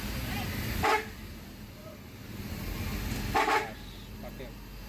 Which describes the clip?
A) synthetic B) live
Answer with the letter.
B